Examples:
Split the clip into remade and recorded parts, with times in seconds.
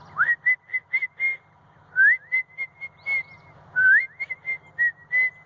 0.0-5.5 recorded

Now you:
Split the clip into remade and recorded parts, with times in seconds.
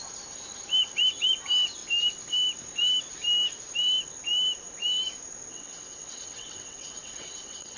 0.0-5.5 recorded; 5.5-7.8 remade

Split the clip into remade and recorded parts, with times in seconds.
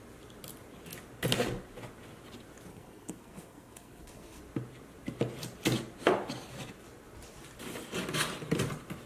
0.0-2.7 recorded; 2.7-4.4 remade; 4.4-9.1 recorded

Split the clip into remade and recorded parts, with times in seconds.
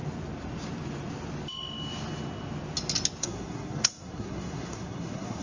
0.0-3.2 recorded; 3.2-5.4 remade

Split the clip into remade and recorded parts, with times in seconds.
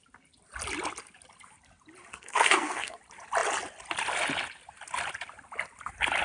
0.0-2.1 recorded; 2.1-3.0 remade; 3.0-6.2 recorded